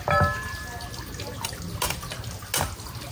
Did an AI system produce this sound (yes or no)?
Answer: no